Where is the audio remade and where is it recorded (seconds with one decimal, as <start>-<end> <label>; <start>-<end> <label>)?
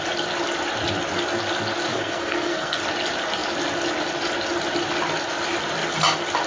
0.0-1.9 recorded; 1.9-2.8 remade; 2.8-6.5 recorded